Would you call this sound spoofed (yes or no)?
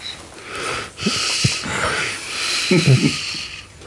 no